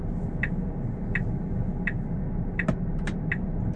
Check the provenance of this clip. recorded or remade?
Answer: recorded